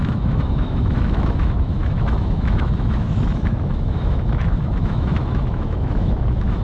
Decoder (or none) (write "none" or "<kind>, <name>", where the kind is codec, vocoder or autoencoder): autoencoder, DAC-VAE